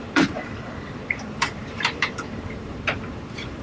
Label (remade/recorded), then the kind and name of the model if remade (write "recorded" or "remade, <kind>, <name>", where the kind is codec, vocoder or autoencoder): remade, vocoder, BigVGAN v2